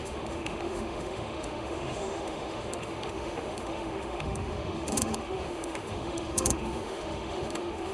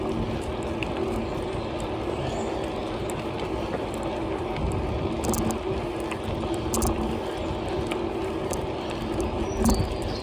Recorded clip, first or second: second